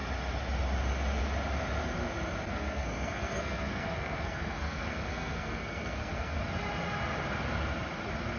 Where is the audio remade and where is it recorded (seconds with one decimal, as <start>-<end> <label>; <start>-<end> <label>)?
0.0-2.5 recorded; 2.5-6.4 remade; 6.4-8.4 recorded